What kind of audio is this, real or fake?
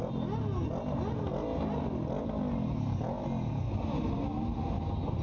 real